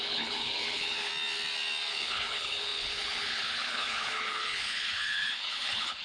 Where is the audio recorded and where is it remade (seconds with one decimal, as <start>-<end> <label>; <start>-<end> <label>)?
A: 0.0-1.1 remade; 1.1-1.9 recorded; 1.9-6.0 remade